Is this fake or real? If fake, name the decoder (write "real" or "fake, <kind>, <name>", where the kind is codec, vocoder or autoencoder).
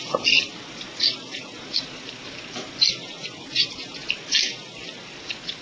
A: real